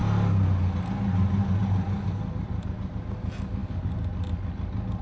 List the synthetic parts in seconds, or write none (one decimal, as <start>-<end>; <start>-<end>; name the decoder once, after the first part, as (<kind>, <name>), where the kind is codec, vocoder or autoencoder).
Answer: none